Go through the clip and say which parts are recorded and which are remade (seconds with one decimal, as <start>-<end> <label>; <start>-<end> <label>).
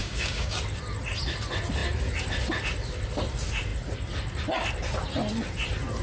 0.0-0.6 remade; 0.6-6.0 recorded